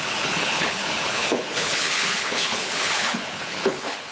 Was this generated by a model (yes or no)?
yes